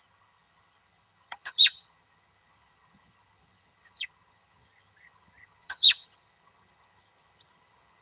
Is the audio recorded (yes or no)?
no